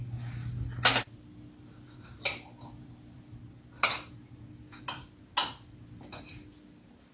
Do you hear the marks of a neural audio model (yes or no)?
no